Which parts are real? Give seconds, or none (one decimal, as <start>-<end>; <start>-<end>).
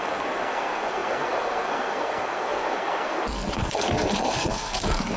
none